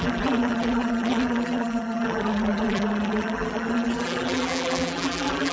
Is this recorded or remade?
remade